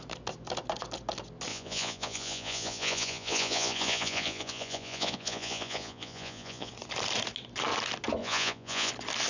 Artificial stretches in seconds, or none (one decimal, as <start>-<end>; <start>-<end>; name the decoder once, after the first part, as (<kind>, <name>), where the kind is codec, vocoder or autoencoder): 1.5-6.7 (vocoder, Vocos); 8.2-8.9

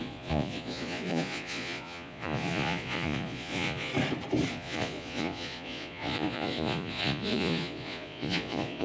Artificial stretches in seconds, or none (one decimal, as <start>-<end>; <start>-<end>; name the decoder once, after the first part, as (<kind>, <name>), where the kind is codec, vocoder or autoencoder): 0.0-3.9 (vocoder, Vocos); 4.5-8.8